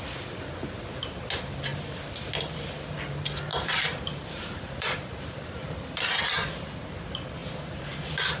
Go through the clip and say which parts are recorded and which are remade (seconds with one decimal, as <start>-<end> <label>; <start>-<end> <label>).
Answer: 0.0-3.5 recorded; 3.5-6.2 remade; 6.2-7.4 recorded; 7.4-8.4 remade